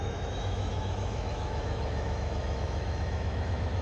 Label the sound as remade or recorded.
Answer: remade